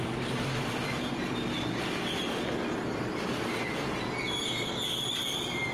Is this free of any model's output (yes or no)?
no